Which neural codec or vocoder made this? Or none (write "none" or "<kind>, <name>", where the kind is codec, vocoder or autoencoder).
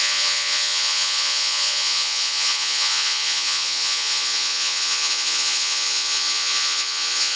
vocoder, Vocos